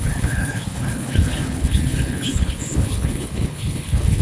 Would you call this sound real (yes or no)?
no